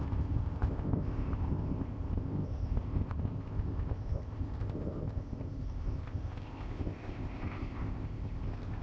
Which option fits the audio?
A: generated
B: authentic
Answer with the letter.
A